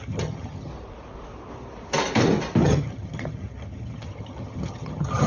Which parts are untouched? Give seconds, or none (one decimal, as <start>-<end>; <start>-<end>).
0.7-2.6